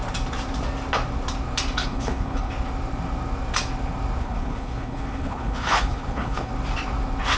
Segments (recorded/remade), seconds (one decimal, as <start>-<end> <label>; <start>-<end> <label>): 0.0-1.8 recorded; 1.8-2.5 remade; 2.5-4.2 recorded; 4.2-6.5 remade; 6.5-7.4 recorded